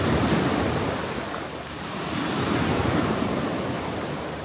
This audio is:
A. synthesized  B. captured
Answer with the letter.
B